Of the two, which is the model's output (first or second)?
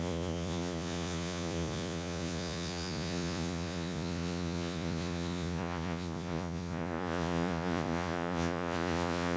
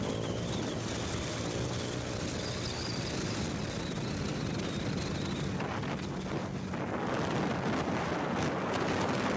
first